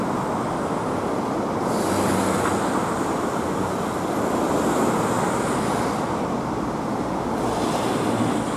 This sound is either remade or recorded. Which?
recorded